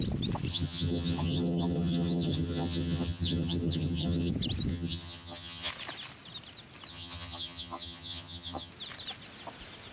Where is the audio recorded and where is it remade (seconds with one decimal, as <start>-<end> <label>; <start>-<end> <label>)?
0.0-0.5 recorded; 0.5-4.3 remade; 4.3-4.7 recorded; 4.7-5.7 remade; 5.7-6.9 recorded; 6.9-8.7 remade; 8.7-9.9 recorded